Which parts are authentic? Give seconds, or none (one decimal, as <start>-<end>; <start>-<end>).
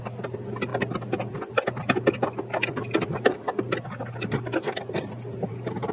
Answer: 0.0-5.9